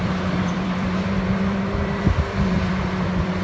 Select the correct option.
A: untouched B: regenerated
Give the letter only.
B